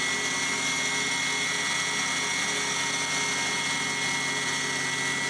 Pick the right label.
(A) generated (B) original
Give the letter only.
B